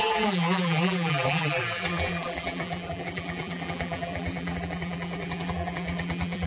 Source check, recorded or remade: remade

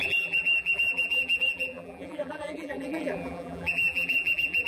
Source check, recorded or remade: remade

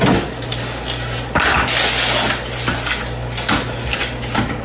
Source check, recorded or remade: recorded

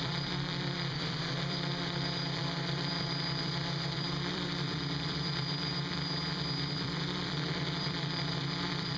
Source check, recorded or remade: remade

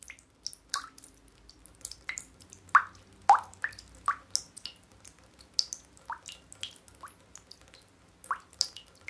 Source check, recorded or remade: recorded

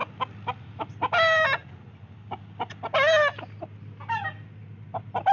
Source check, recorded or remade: recorded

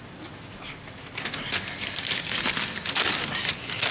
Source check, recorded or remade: recorded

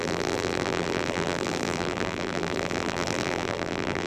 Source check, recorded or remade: remade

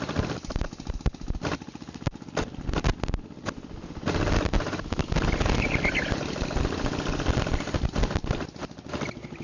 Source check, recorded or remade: recorded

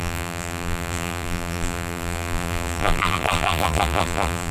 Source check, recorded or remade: remade